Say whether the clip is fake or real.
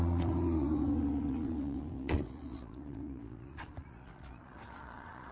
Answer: fake